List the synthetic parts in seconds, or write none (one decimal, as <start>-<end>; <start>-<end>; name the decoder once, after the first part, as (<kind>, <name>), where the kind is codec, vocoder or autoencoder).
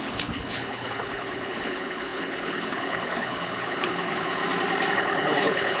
0.0-4.4 (codec, HILCodec); 4.9-5.8